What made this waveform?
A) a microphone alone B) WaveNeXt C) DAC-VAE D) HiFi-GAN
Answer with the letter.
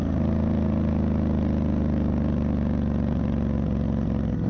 A